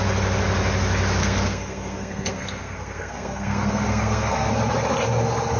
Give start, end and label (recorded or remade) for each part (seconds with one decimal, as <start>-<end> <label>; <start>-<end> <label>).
0.0-1.2 recorded; 1.2-4.5 remade; 4.5-5.6 recorded